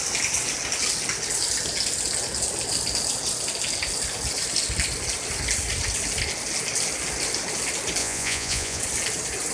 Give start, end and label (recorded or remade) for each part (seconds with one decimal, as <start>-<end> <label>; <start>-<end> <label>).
0.0-8.0 recorded; 8.0-8.8 remade; 8.8-9.5 recorded